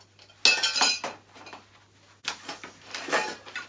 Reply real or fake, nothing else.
real